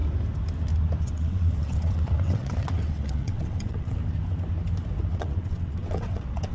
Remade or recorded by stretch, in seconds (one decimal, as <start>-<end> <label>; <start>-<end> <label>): 0.0-1.0 recorded; 1.0-4.0 remade; 4.0-5.1 recorded; 5.1-6.5 remade